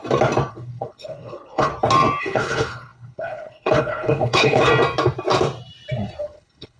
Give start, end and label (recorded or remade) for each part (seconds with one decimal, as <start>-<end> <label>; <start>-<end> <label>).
0.0-0.5 recorded; 0.5-1.7 remade; 1.7-2.2 recorded; 2.2-4.7 remade; 4.7-6.2 recorded; 6.2-6.8 remade